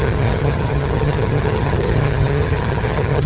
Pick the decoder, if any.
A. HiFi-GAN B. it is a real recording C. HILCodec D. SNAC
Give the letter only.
A